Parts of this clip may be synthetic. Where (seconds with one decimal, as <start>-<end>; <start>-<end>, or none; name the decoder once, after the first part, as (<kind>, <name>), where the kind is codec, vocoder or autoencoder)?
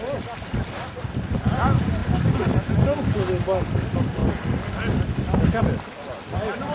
none